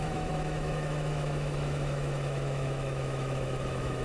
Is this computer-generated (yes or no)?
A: yes